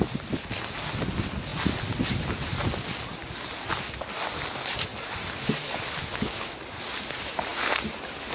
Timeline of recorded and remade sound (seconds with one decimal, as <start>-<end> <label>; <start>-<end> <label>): 0.0-8.3 recorded